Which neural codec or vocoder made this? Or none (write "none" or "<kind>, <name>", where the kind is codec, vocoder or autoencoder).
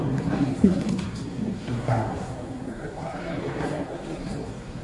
codec, SNAC